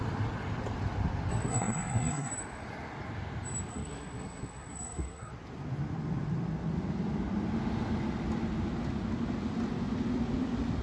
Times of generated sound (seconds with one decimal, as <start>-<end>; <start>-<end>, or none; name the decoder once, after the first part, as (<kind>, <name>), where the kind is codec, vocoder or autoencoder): 1.3-2.3 (codec, SNAC); 3.7-5.3